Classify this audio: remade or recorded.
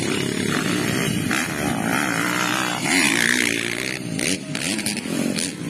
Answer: remade